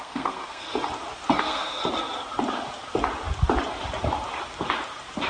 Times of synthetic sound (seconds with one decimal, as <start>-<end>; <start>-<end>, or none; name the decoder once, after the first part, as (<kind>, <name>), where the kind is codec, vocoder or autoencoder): 0.0-0.7 (codec, SNAC); 1.4-1.8